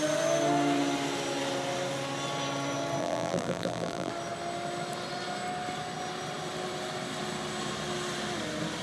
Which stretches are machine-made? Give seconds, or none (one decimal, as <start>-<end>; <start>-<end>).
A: 3.0-4.1

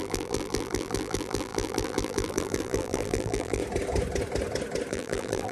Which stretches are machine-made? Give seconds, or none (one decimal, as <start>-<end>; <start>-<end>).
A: 0.0-3.6; 4.9-5.5

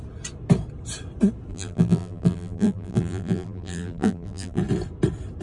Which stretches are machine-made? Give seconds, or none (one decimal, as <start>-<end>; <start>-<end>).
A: 1.5-4.6